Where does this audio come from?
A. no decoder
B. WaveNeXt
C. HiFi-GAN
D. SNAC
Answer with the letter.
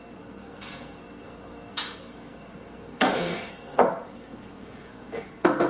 D